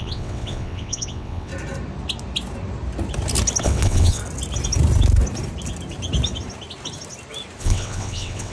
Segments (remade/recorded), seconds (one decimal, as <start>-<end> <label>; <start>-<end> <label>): 0.0-1.5 remade; 1.5-3.6 recorded; 3.6-4.2 remade; 4.2-7.6 recorded; 7.6-8.5 remade